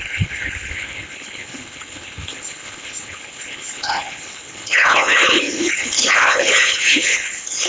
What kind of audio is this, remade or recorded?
remade